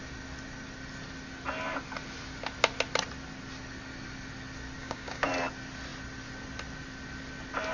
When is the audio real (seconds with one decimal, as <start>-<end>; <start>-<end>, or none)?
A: 0.0-4.8; 5.3-7.7